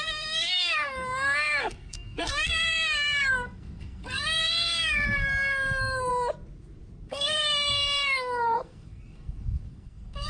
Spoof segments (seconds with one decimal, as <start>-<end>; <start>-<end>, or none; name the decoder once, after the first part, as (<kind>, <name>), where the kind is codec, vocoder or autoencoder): 0.0-6.1 (codec, SNAC); 7.1-10.3